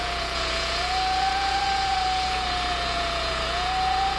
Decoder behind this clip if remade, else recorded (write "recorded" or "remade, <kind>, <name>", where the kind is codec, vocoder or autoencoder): remade, vocoder, Vocos